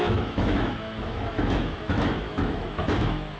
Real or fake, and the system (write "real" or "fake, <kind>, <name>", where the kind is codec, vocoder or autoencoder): fake, autoencoder, DAC-VAE